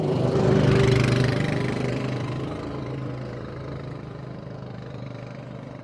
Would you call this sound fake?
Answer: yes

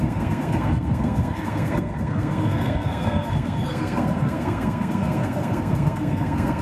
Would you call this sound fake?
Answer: yes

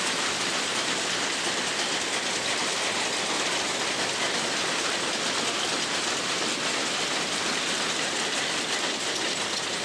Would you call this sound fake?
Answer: no